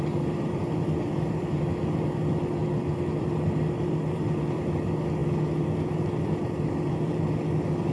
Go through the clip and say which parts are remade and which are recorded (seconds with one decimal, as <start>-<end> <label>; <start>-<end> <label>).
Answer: 0.0-2.6 remade; 2.6-3.2 recorded; 3.2-7.9 remade